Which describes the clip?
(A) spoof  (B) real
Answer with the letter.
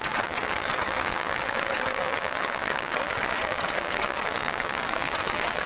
A